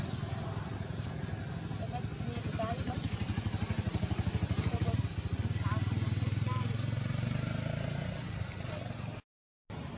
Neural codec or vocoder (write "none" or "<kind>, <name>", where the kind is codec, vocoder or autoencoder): none